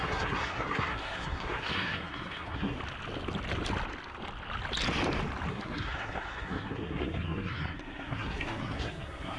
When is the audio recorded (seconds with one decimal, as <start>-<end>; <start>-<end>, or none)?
2.8-5.5